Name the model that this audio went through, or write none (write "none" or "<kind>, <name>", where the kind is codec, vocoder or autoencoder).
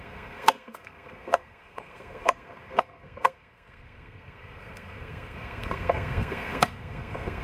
codec, SNAC